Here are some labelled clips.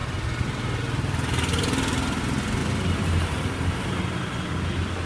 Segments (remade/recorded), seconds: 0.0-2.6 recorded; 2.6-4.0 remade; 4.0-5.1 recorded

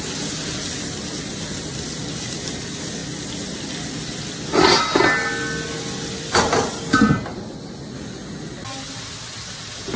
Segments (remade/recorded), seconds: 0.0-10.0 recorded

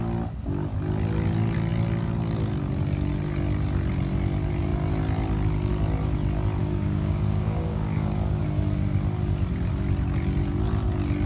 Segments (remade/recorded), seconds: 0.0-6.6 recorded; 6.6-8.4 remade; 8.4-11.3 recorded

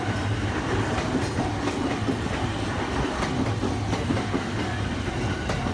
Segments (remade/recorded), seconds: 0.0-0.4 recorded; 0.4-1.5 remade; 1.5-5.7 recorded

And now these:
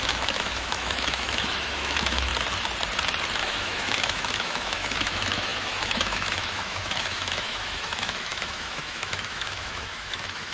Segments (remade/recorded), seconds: 0.0-2.3 remade; 2.3-3.4 recorded; 3.4-10.5 remade

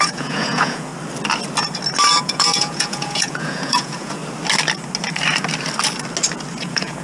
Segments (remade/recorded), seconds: 0.0-0.9 remade; 0.9-2.2 recorded; 2.2-4.2 remade; 4.2-6.6 recorded; 6.6-7.0 remade